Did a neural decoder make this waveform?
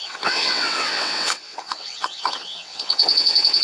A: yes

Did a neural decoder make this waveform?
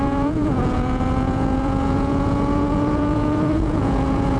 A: yes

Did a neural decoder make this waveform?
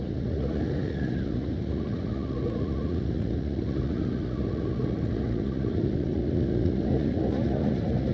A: yes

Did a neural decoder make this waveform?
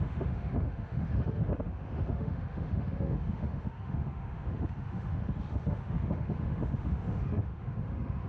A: yes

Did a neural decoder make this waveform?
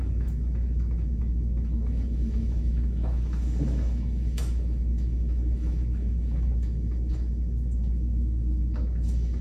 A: yes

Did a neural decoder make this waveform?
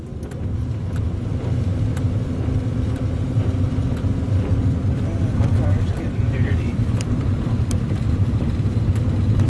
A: yes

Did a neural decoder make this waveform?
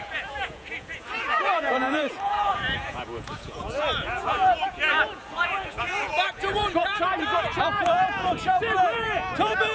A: yes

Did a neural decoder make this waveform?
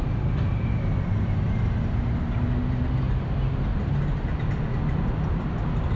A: no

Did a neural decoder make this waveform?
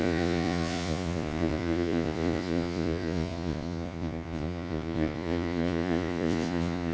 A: yes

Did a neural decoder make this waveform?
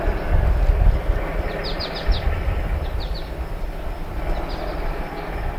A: no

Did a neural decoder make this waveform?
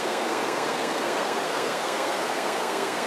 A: yes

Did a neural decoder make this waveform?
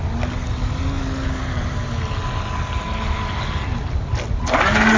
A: no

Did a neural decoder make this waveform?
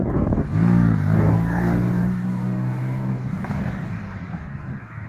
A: yes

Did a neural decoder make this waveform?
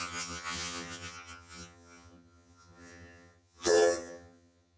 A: yes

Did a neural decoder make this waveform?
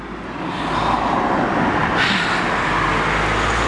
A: no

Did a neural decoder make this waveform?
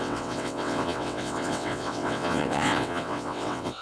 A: yes